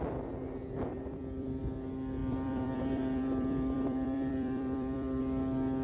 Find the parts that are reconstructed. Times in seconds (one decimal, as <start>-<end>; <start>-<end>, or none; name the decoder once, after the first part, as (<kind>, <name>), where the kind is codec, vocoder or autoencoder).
0.9-1.6 (vocoder, BigVGAN v2); 2.2-5.2